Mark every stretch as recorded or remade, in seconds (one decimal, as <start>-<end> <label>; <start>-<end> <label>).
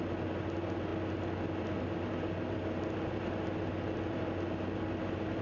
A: 0.0-5.4 recorded